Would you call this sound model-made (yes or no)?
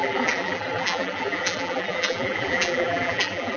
yes